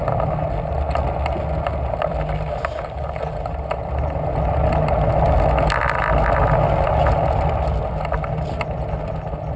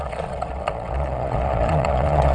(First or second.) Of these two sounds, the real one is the first